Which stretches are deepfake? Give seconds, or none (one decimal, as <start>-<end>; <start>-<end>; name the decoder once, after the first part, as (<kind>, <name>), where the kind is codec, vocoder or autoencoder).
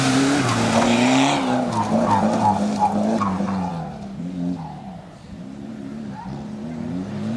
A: none